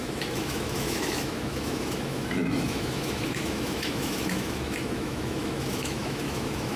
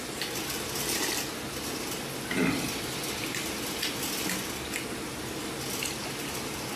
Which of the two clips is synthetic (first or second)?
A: first